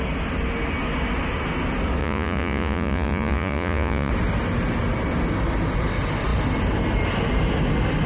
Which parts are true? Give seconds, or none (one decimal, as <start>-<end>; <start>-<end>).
0.0-2.0; 4.1-8.1